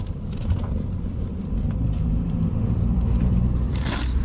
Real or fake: fake